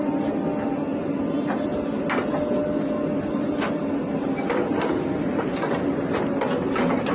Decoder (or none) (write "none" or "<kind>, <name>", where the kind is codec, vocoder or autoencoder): none